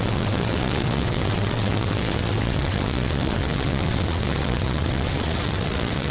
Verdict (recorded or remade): remade